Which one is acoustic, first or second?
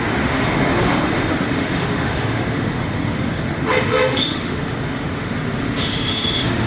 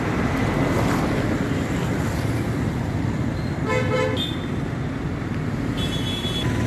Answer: second